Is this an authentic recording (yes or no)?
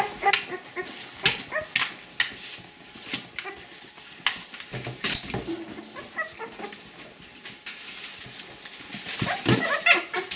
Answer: yes